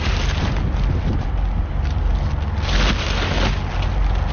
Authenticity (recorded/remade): recorded